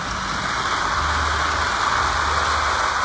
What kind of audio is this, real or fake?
real